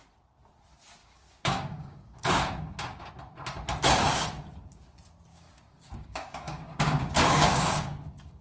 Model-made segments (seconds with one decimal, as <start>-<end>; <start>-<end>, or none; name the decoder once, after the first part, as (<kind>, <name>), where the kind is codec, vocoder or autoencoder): 1.0-3.1 (codec, DAC); 5.3-8.4